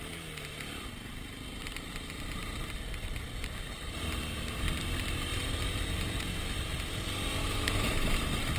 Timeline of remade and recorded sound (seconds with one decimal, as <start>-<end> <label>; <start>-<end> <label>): 0.0-7.4 recorded; 7.4-8.1 remade; 8.1-8.6 recorded